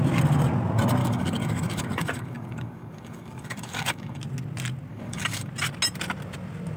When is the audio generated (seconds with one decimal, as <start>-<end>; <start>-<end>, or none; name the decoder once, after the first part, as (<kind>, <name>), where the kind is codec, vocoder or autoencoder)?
1.0-4.2 (codec, DAC); 4.9-5.5